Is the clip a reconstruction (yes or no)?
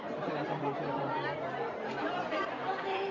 yes